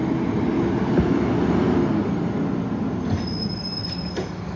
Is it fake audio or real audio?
real